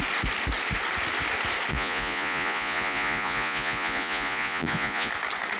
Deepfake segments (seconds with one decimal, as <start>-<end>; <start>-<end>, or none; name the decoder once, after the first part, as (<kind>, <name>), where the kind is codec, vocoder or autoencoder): 1.7-5.1 (vocoder, Vocos)